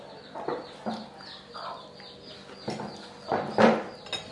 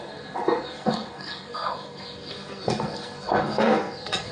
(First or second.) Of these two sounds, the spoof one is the second